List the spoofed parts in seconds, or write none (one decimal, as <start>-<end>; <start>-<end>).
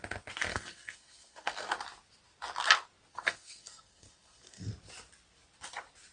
0.5-1.7; 3.1-4.7